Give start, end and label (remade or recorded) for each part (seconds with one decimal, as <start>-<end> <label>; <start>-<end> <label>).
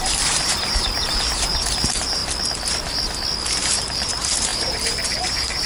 0.0-2.2 remade; 2.2-3.6 recorded; 3.6-5.7 remade